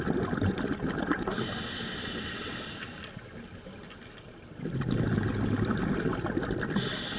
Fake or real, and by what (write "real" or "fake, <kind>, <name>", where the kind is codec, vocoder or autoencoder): real